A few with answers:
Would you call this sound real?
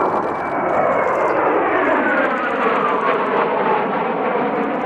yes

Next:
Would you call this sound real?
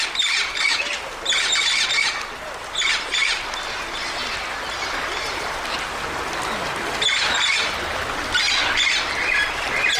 yes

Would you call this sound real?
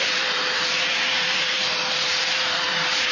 no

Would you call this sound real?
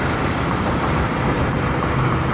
no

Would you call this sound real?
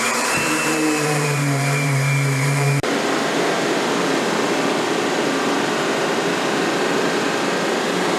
no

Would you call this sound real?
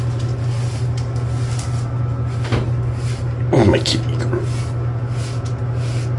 yes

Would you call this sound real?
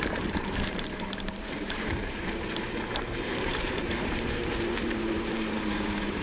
no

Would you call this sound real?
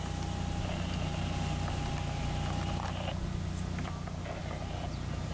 yes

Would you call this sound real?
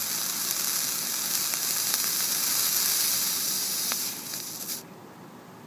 yes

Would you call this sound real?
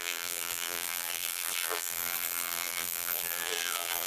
no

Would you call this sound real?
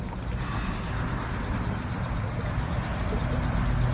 yes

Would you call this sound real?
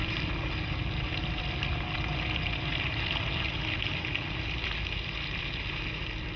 yes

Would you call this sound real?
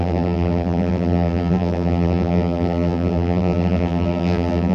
no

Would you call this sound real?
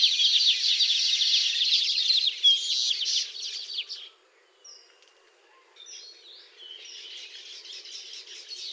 yes